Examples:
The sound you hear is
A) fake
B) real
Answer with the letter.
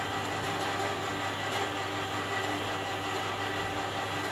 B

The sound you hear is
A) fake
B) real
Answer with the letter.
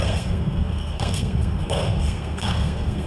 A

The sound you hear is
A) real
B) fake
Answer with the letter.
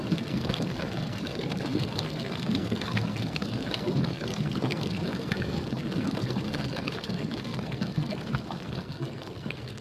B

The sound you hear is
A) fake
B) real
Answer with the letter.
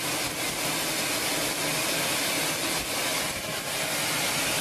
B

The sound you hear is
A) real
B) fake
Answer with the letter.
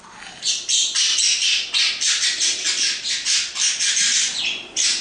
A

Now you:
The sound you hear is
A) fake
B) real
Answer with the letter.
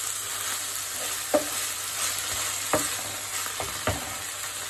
B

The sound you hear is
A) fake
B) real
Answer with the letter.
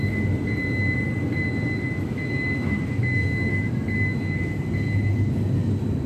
B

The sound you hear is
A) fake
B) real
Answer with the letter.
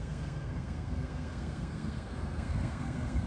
A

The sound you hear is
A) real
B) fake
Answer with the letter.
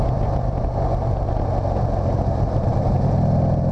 A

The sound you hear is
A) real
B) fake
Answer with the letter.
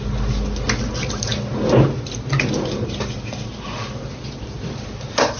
A